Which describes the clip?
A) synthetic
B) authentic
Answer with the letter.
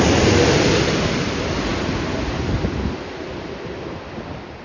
B